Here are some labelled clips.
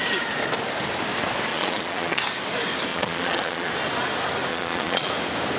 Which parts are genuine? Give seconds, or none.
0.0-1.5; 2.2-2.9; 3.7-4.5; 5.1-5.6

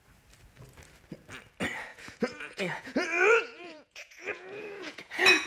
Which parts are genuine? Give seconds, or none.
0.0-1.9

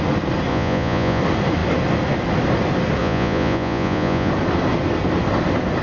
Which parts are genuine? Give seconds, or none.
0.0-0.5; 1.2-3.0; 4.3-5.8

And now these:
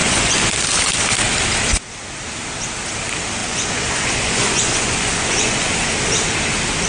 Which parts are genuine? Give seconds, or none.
0.5-3.4; 5.9-6.9